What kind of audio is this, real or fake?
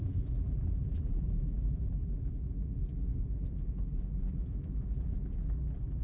fake